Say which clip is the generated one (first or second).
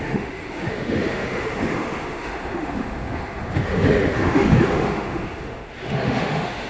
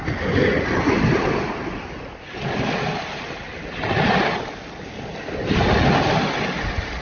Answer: first